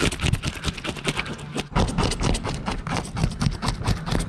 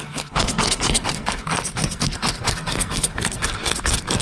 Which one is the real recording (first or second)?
first